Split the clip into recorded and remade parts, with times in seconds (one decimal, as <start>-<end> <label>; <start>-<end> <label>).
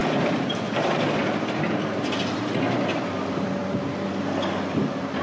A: 0.0-5.2 recorded